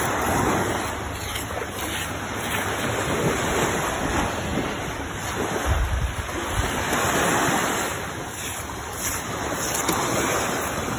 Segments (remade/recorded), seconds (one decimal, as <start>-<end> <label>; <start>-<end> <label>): 0.0-7.9 recorded; 7.9-8.9 remade; 8.9-11.0 recorded